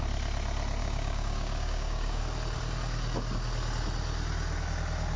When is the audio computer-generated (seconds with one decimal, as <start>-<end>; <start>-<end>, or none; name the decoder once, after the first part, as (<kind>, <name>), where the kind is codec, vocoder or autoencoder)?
0.8-2.2 (codec, DAC)